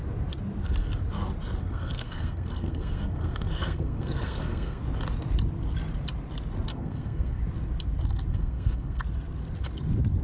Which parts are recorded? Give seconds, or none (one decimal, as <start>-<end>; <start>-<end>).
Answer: 0.0-1.6; 4.8-6.7; 7.4-8.3; 9.0-10.2